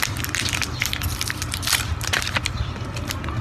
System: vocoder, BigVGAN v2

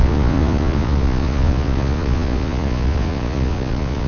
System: vocoder, Vocos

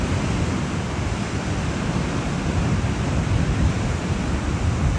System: none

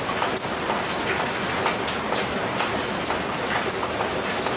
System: none